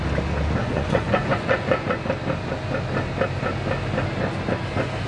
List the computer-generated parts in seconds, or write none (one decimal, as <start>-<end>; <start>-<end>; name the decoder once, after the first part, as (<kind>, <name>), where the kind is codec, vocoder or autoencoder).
0.6-2.0 (vocoder, Vocos)